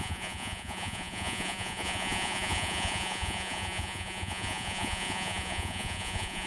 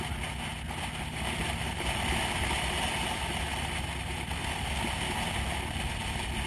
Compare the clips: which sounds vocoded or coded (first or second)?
first